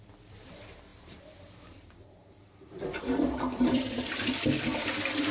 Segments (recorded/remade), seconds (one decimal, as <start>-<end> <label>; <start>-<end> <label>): 0.0-5.3 remade